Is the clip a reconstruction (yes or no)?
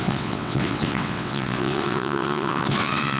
yes